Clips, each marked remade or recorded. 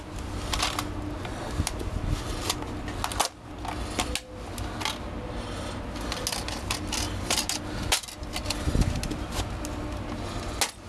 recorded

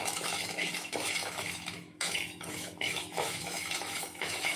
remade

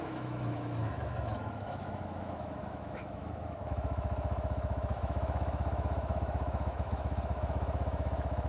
remade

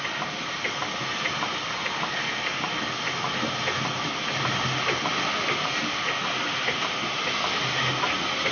recorded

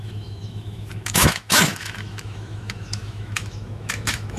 remade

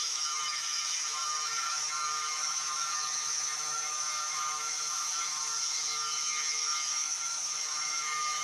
remade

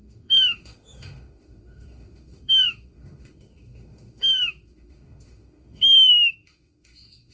remade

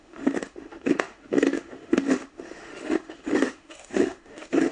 remade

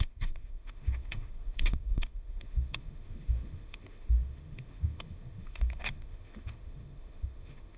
remade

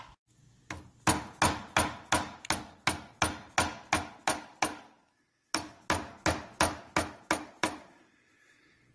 recorded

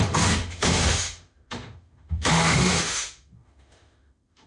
remade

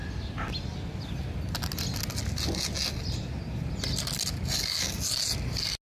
recorded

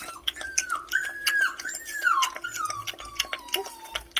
recorded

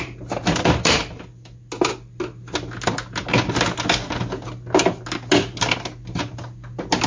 recorded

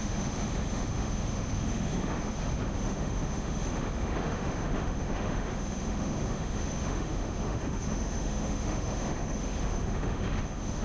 remade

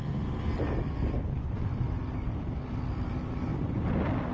recorded